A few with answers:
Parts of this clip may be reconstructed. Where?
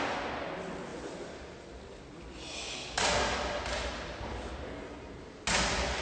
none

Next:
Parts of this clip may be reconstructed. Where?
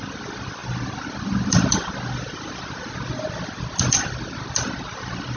none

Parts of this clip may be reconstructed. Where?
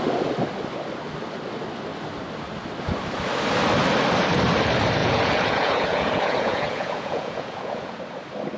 5.0-8.0 (vocoder, Vocos)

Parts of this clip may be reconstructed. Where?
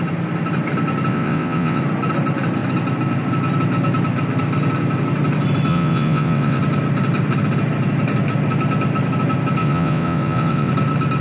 1.1-1.8 (vocoder, WaveNeXt); 5.7-6.6; 9.6-10.7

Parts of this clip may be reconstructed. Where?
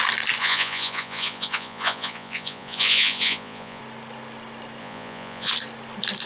0.4-3.8 (vocoder, Vocos); 4.8-5.5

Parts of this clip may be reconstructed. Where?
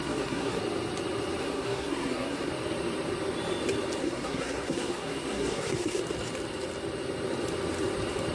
0.0-0.6 (codec, SNAC); 1.4-2.5; 4.0-6.0